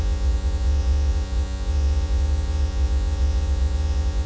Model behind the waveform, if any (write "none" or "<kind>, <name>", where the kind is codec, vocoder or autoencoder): vocoder, Vocos